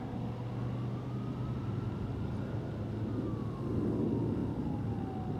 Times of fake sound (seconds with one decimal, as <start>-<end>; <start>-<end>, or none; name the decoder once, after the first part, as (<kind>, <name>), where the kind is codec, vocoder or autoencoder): none